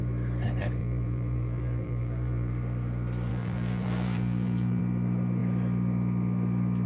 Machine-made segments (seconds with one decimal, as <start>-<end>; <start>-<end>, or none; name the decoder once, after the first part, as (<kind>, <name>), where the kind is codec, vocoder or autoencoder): 0.8-2.5 (vocoder, BigVGAN v2); 3.3-4.8